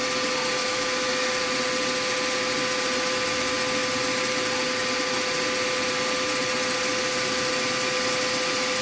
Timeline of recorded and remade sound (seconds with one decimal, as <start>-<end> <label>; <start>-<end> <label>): 0.0-0.6 recorded; 0.6-1.3 remade; 1.3-8.8 recorded